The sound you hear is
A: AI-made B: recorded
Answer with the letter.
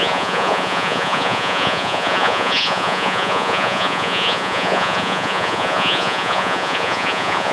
A